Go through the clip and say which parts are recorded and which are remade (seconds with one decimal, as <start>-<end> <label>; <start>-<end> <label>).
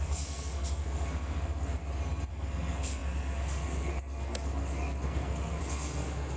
0.0-1.8 remade; 1.8-2.3 recorded; 2.3-6.4 remade